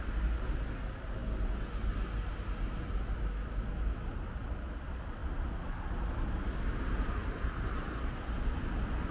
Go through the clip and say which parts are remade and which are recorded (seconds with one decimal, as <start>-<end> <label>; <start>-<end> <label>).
0.0-9.1 recorded